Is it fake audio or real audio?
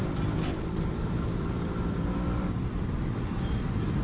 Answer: fake